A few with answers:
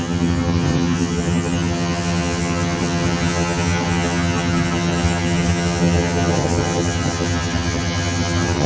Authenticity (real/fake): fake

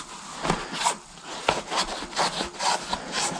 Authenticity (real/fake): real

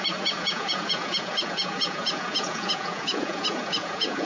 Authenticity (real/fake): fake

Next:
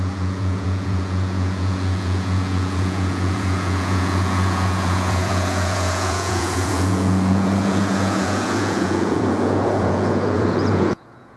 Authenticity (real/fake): fake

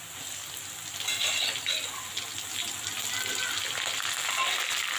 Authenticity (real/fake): real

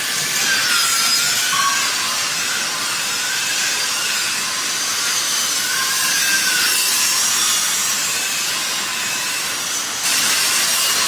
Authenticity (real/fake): real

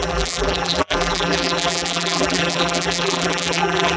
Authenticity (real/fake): fake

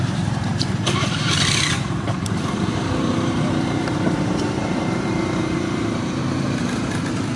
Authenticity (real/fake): fake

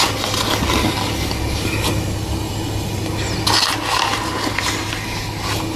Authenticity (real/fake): real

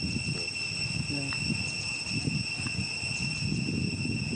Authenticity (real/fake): real